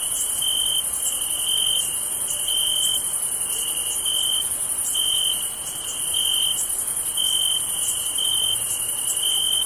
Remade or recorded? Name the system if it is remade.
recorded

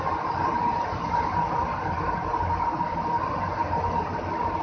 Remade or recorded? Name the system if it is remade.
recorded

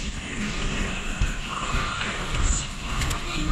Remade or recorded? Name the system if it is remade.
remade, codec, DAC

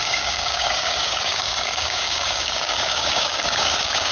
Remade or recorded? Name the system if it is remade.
remade, codec, DAC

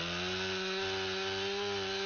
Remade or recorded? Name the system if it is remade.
recorded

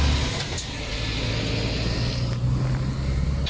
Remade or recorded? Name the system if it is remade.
recorded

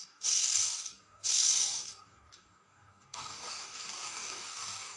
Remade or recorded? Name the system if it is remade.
remade, codec, DAC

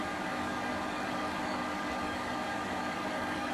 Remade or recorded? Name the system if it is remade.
remade, codec, DAC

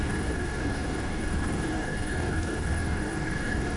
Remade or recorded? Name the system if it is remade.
remade, codec, DAC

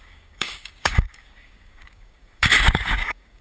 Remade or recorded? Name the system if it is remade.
remade, codec, DAC